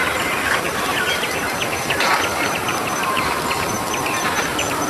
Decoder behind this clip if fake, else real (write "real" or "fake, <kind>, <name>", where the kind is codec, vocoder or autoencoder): fake, vocoder, BigVGAN v2